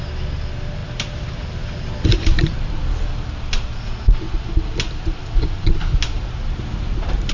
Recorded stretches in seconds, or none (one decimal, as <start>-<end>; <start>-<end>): 0.0-7.3